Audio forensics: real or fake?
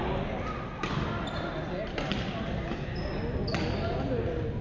real